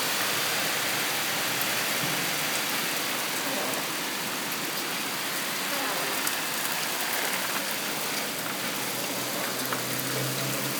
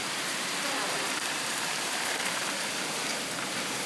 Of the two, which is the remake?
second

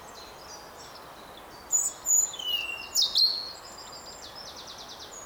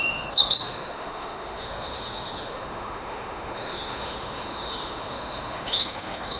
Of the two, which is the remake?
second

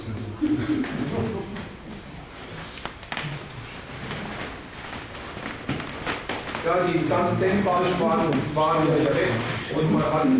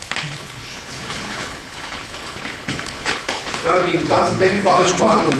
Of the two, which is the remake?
second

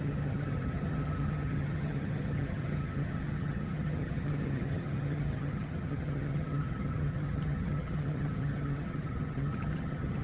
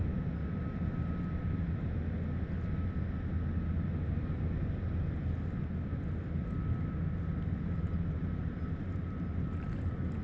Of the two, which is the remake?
first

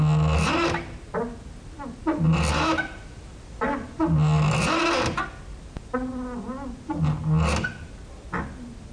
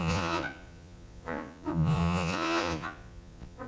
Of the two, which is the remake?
second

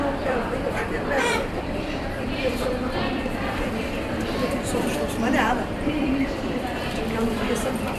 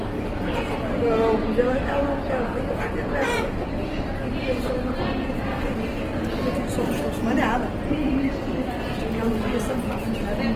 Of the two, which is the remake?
first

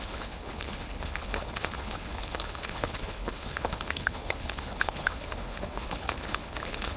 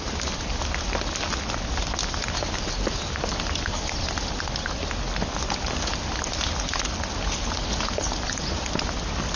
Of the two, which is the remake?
first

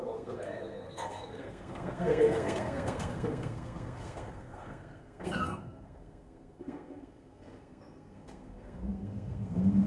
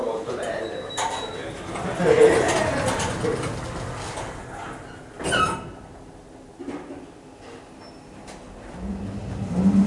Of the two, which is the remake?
first